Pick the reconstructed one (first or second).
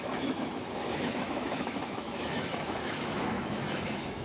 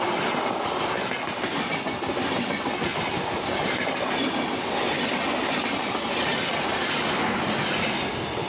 first